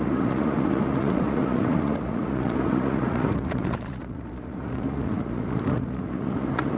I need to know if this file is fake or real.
fake